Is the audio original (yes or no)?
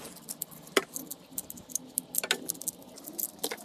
yes